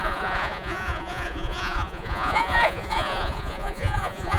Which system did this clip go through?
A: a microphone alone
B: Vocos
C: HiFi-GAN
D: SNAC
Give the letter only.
B